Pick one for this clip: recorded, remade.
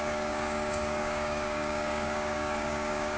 remade